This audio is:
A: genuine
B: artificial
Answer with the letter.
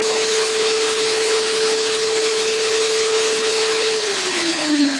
B